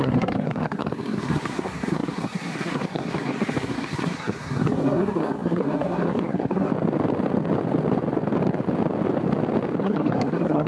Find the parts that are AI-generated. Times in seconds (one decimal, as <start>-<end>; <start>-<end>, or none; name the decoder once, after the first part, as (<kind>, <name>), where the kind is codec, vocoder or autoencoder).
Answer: 0.0-6.7 (codec, SNAC); 9.8-10.7